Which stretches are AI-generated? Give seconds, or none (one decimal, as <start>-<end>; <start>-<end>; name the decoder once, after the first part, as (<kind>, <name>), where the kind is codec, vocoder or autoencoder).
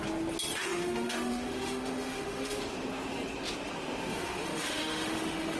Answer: 0.5-2.6 (autoencoder, DAC-VAE); 4.1-5.6